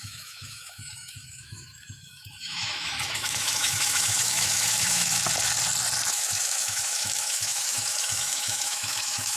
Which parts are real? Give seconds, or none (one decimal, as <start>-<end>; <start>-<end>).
5.2-6.1

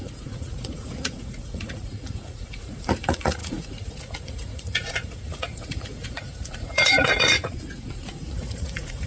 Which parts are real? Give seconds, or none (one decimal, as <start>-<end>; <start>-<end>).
none

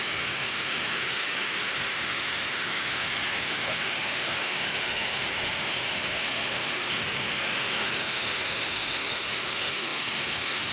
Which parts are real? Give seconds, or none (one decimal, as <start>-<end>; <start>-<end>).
none